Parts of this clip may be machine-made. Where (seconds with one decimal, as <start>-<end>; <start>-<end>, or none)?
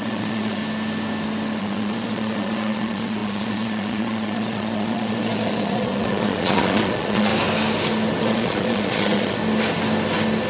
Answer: 0.0-0.6; 1.6-7.3; 8.2-9.4